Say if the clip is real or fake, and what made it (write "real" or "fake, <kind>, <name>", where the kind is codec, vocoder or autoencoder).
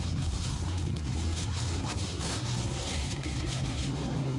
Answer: fake, codec, SNAC